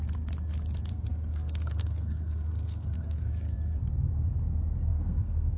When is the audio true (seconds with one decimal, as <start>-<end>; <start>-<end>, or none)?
0.0-0.9; 3.3-4.9